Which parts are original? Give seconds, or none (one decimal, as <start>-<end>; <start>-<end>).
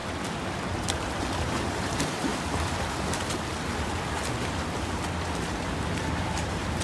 0.0-0.8; 2.3-5.4